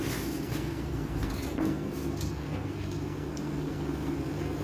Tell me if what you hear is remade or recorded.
remade